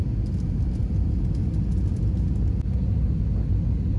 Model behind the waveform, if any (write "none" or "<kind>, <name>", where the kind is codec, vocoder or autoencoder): none